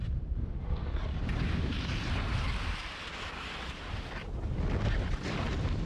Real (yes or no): yes